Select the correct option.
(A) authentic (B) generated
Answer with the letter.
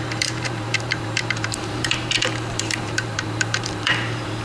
B